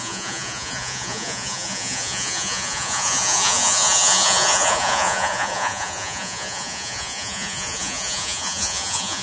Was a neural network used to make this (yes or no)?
yes